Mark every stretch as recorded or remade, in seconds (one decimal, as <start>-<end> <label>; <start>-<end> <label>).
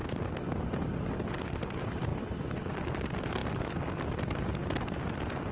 0.0-5.5 recorded